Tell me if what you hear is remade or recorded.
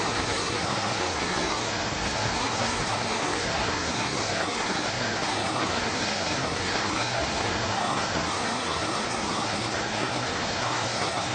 remade